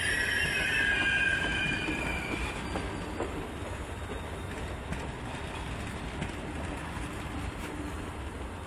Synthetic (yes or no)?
no